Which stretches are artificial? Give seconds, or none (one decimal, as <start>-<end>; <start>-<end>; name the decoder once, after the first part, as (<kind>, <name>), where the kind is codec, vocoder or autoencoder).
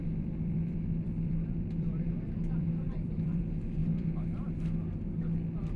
0.0-3.4 (vocoder, BigVGAN v2); 3.8-4.6